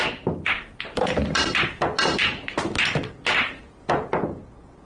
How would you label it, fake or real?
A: fake